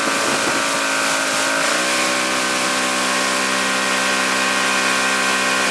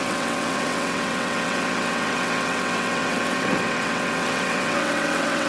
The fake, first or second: second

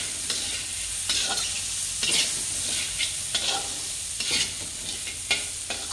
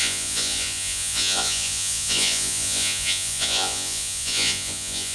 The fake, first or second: second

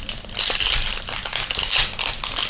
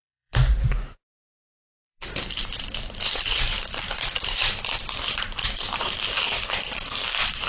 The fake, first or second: second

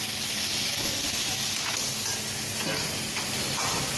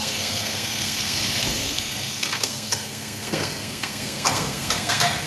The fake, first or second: second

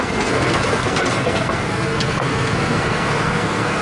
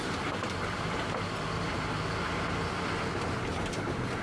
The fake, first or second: first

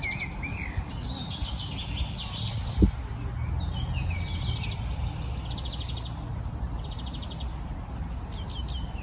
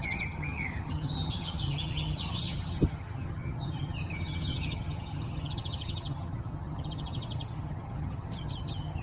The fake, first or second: second